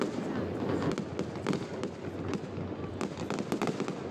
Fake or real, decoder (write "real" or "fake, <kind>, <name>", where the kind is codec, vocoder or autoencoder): real